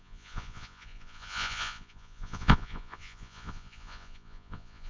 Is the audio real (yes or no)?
no